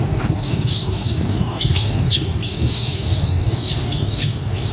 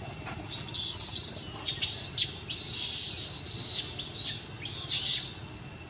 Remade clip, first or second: first